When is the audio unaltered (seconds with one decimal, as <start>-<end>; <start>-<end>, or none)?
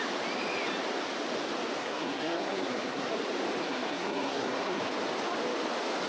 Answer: 0.0-1.8; 3.1-3.6; 4.8-6.1